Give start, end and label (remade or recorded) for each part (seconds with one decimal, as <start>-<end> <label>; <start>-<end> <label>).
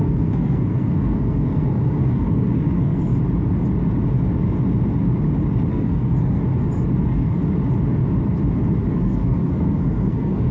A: 0.0-3.1 remade; 3.1-5.7 recorded; 5.7-6.4 remade; 6.4-7.0 recorded; 7.0-7.4 remade; 7.4-8.9 recorded; 8.9-10.5 remade